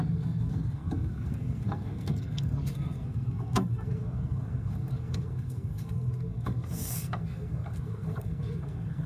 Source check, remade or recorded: remade